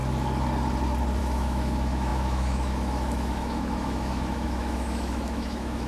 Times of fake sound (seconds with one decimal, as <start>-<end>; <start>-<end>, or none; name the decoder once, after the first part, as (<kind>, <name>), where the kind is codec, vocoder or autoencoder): 1.2-5.9 (autoencoder, DAC-VAE)